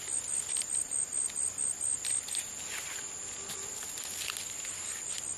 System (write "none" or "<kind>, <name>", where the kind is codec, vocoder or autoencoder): none